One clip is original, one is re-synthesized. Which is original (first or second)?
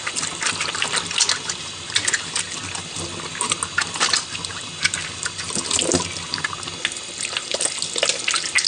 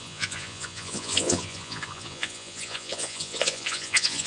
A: first